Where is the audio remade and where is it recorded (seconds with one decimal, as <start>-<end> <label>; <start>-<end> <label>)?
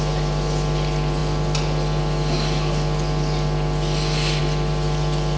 0.0-5.4 recorded